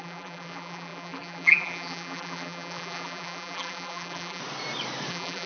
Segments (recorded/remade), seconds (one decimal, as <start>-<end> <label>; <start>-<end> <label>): 0.0-4.4 remade; 4.4-5.1 recorded; 5.1-5.5 remade

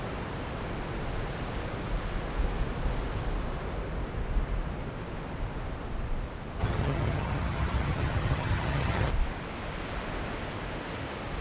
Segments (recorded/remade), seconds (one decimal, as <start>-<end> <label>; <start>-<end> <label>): 0.0-6.6 recorded; 6.6-9.1 remade; 9.1-11.4 recorded

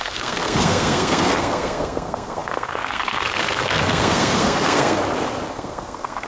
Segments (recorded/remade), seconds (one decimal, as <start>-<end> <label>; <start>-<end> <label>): 0.0-5.0 remade; 5.0-5.5 recorded; 5.5-6.3 remade

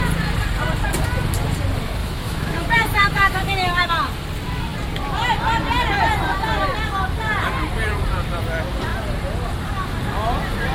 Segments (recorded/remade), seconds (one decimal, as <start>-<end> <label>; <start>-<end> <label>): 0.0-2.0 recorded; 2.0-3.9 remade; 3.9-10.7 recorded

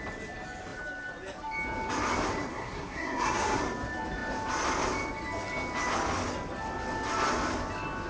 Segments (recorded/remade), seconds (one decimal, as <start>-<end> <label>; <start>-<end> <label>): 0.0-2.5 recorded; 2.5-3.6 remade; 3.6-8.1 recorded

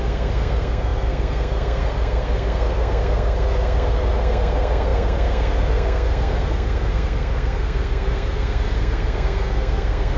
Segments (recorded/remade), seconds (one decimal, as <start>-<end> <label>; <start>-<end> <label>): 0.0-10.2 remade

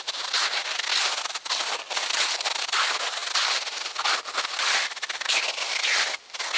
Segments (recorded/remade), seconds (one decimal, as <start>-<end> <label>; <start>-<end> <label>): 0.0-6.6 recorded